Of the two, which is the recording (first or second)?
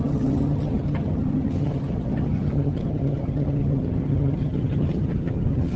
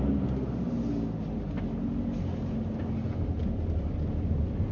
second